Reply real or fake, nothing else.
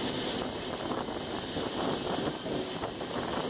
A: real